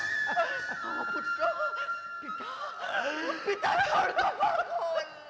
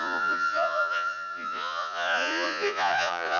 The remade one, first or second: second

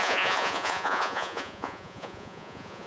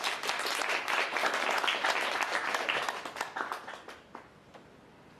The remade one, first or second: first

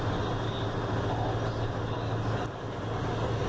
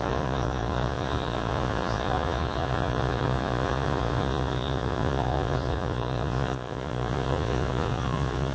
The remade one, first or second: second